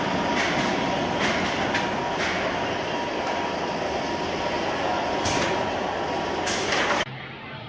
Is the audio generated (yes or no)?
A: no